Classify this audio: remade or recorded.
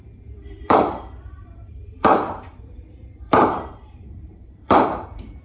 remade